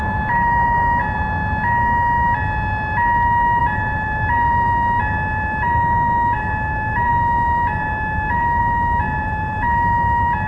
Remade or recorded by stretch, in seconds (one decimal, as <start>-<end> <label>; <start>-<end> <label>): 0.0-1.0 remade; 1.0-3.6 recorded; 3.6-10.5 remade